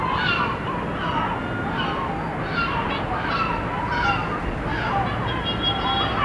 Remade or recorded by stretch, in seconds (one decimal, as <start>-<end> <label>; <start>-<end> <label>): 0.0-3.0 recorded; 3.0-3.5 remade; 3.5-5.8 recorded; 5.8-6.2 remade